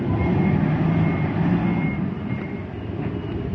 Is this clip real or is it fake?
real